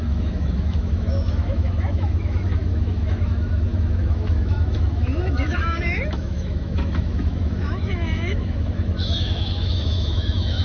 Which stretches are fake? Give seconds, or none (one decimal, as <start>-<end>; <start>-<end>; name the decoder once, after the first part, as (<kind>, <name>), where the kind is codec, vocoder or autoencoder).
0.0-10.6 (autoencoder, DAC-VAE)